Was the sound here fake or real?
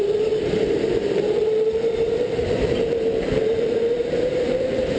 fake